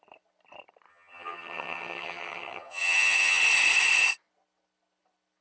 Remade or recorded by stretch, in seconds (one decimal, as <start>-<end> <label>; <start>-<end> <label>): 0.0-0.9 recorded; 0.9-3.4 remade; 3.4-5.4 recorded